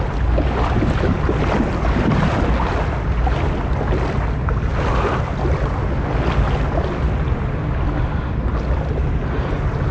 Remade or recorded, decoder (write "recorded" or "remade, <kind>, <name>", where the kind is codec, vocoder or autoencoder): recorded